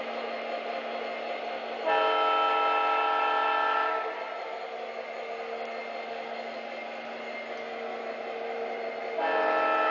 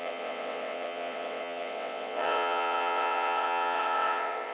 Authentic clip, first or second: first